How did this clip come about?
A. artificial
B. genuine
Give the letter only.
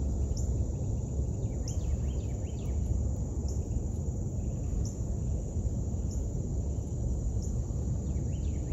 B